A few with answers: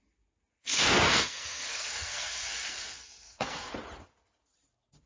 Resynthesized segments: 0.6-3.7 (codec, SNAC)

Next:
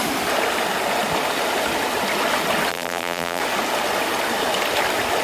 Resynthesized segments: 2.7-3.4 (vocoder, BigVGAN v2)

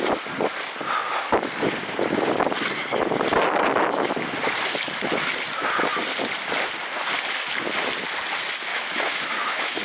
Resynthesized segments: 8.7-9.8 (autoencoder, DAC-VAE)

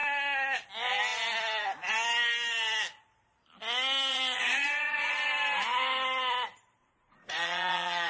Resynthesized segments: 4.1-5.3 (vocoder, Vocos); 6.8-8.1

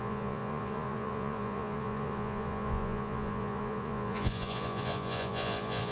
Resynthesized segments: 0.0-5.9 (vocoder, Vocos)